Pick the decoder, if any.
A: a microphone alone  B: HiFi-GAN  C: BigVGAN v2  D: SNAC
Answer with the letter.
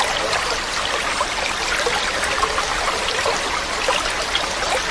A